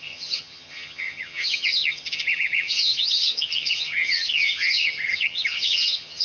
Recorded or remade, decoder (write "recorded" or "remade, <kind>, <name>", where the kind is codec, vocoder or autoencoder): remade, vocoder, HiFi-GAN